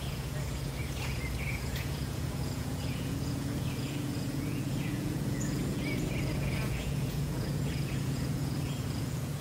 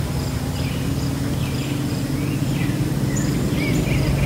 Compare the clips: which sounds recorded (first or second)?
second